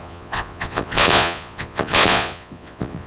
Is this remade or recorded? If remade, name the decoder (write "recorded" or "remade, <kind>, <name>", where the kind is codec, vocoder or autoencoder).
remade, vocoder, Vocos